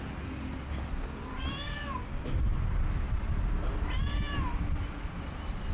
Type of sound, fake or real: real